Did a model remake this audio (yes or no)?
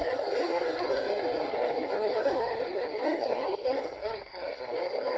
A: yes